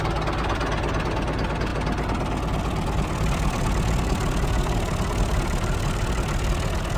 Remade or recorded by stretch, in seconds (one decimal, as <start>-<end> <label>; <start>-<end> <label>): 0.0-7.0 recorded